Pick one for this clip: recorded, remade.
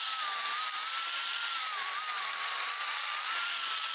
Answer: recorded